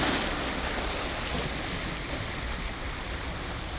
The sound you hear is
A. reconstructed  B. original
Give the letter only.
B